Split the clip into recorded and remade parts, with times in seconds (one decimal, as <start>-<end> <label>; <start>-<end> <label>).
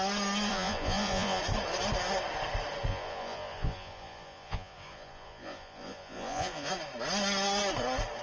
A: 0.0-0.5 recorded; 0.5-1.4 remade; 1.4-2.9 recorded; 2.9-6.7 remade; 6.7-8.2 recorded